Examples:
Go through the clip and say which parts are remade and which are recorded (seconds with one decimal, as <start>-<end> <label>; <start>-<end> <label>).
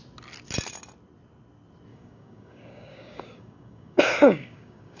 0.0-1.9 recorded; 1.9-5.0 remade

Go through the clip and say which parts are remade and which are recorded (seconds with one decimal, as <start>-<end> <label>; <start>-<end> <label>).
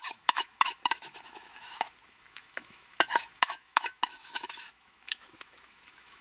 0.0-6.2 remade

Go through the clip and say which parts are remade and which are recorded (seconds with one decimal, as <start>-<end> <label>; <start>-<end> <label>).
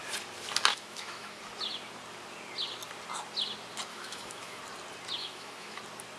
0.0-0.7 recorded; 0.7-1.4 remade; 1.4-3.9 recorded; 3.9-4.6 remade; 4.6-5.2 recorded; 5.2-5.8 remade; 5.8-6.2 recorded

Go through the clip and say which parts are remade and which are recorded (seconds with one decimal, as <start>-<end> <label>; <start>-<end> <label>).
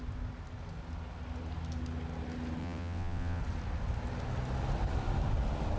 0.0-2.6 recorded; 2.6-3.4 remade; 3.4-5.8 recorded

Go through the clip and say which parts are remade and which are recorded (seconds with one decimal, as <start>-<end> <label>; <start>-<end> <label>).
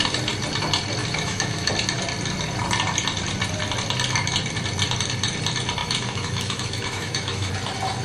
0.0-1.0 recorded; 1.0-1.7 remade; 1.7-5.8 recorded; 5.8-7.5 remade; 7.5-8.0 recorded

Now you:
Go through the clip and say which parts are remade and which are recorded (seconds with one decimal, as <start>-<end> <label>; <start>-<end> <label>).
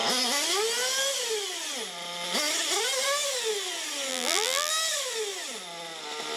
0.0-4.1 recorded; 4.1-4.7 remade; 4.7-6.4 recorded